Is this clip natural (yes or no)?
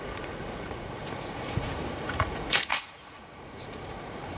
no